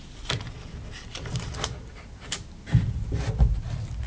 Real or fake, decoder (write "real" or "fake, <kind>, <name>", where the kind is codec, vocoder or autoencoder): real